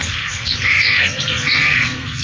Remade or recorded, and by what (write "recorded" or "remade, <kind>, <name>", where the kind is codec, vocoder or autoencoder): remade, codec, SNAC